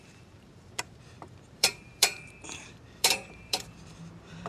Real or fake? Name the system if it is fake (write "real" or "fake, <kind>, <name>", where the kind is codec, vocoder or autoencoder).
fake, vocoder, BigVGAN v2